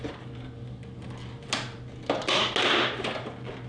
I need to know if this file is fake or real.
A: real